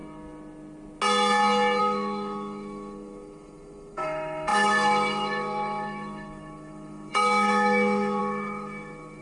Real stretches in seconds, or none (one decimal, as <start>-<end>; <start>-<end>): 0.0-1.8